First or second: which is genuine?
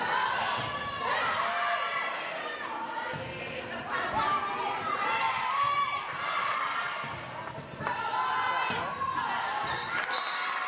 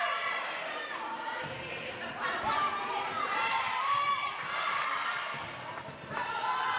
first